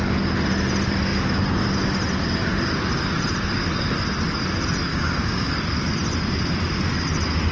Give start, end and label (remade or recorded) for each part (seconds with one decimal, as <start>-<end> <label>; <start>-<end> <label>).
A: 0.0-4.9 recorded; 4.9-5.5 remade; 5.5-7.5 recorded